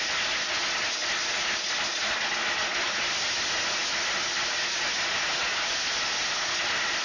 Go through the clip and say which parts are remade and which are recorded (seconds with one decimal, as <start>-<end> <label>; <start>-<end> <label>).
0.0-7.0 recorded